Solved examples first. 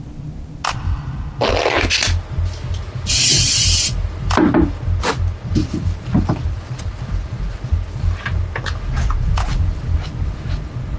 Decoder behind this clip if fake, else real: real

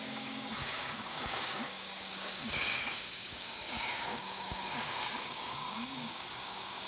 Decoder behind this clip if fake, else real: fake, codec, DAC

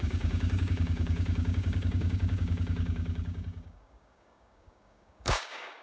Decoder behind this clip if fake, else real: fake, codec, DAC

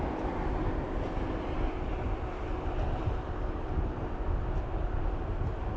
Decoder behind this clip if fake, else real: real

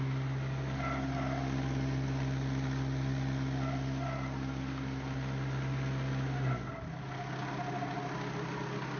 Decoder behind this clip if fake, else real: real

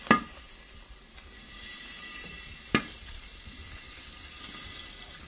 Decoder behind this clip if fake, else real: real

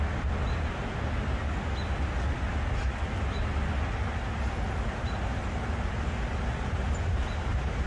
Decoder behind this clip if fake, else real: real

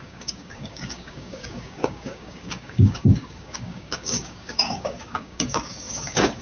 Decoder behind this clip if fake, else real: fake, codec, DAC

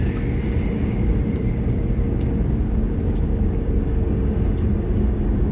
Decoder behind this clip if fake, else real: fake, codec, DAC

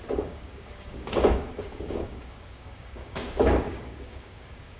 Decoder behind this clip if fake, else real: fake, codec, DAC